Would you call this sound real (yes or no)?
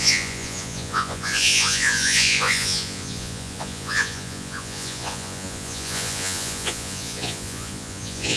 no